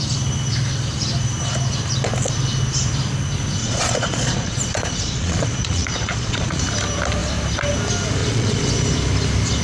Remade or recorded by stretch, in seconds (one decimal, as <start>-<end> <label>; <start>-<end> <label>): 0.0-3.6 recorded; 3.6-6.6 remade; 6.6-8.2 recorded; 8.2-8.7 remade; 8.7-9.6 recorded